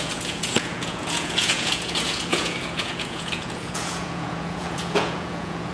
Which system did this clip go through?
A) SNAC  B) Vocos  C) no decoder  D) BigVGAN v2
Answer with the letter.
B